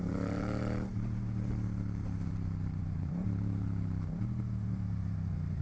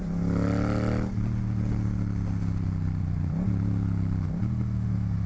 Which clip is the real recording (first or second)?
second